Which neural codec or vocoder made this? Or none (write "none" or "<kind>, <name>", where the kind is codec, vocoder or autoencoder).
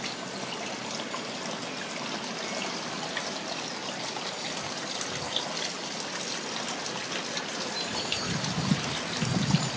none